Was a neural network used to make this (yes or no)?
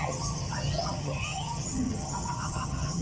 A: yes